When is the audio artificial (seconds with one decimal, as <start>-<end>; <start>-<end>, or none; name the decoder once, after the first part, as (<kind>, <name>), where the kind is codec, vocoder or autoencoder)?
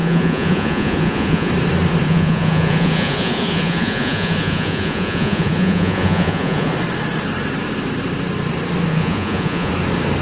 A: 0.0-1.5 (vocoder, Vocos); 2.0-6.7; 8.9-9.7